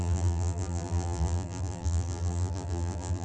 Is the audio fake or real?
fake